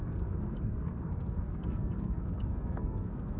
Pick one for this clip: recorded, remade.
remade